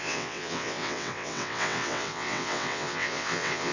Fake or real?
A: fake